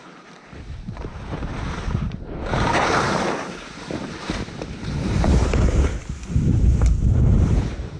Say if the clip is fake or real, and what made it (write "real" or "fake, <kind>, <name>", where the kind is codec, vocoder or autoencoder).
fake, vocoder, BigVGAN v2